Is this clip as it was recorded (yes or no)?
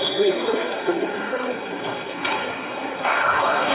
no